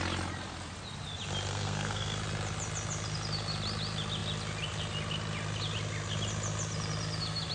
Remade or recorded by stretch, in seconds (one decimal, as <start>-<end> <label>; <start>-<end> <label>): 0.0-1.5 recorded; 1.5-2.2 remade; 2.2-7.5 recorded